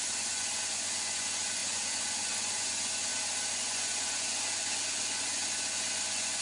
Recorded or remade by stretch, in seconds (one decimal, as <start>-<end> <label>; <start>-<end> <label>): 0.0-3.1 remade; 3.1-3.6 recorded; 3.6-6.4 remade